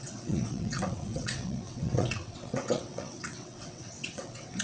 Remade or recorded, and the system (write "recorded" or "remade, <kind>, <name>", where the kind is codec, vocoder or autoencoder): remade, vocoder, WaveNeXt